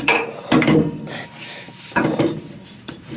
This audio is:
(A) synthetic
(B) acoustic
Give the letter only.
A